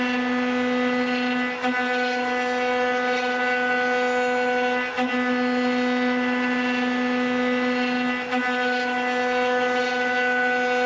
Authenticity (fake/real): real